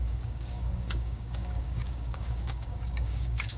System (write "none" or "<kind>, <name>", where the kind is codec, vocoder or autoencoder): codec, DAC